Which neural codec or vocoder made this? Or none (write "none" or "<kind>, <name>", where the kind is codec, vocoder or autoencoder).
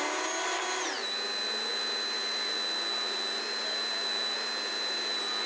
none